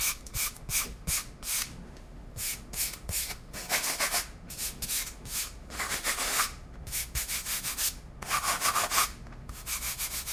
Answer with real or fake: fake